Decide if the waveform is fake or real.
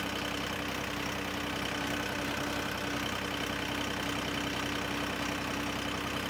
real